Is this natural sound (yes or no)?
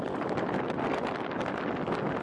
yes